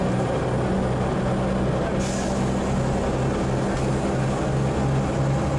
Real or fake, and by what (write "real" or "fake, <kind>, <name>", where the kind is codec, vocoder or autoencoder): real